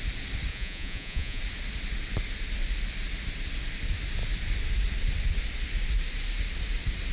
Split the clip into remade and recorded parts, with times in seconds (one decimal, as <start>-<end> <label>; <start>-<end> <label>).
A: 0.0-0.5 recorded; 0.5-1.4 remade; 1.4-7.1 recorded